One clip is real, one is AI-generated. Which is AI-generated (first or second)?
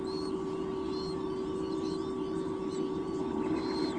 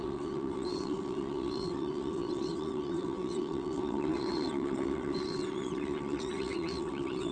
second